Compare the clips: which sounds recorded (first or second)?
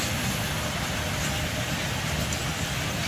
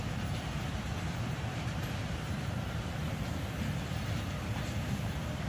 first